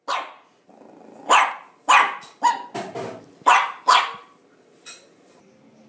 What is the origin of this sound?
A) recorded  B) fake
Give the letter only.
A